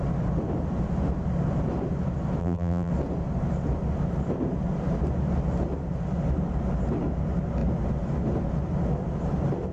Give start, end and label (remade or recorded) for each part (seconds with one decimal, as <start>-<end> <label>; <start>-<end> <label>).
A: 0.0-2.4 recorded; 2.4-2.9 remade; 2.9-9.7 recorded